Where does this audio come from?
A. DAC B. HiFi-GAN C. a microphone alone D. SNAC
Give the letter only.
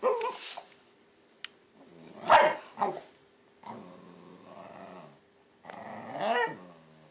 C